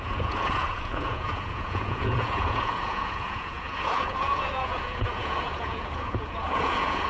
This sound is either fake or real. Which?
fake